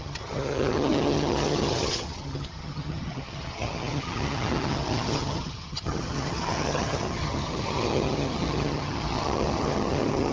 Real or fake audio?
fake